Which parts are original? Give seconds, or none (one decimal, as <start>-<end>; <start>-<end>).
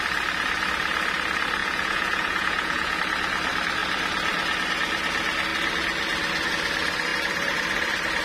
0.0-1.6; 3.0-8.2